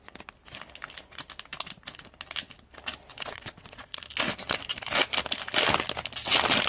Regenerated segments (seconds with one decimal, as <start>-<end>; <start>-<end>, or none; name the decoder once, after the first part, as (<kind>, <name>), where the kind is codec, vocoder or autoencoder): 3.1-4.0 (vocoder, Vocos)